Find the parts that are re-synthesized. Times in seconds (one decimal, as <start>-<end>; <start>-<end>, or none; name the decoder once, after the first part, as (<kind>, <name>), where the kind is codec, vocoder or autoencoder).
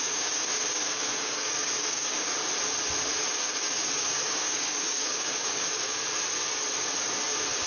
0.0-2.3 (codec, DAC); 3.3-6.0